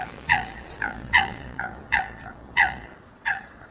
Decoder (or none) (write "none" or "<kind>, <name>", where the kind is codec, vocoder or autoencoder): vocoder, Vocos